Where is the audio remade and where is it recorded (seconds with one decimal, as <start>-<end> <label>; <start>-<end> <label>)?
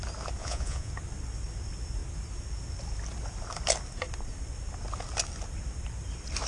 0.0-0.4 recorded; 0.4-0.9 remade; 0.9-6.5 recorded